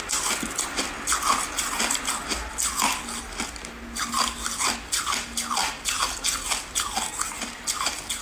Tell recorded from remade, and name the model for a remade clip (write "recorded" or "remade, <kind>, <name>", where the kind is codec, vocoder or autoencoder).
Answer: recorded